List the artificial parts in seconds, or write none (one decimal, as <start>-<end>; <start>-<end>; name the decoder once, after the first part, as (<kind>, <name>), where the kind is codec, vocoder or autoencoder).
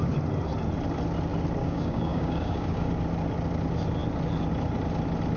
1.6-2.9 (codec, DAC)